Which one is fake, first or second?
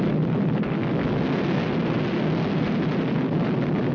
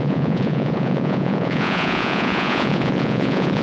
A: second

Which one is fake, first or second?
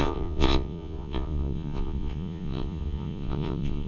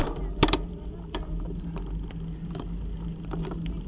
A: first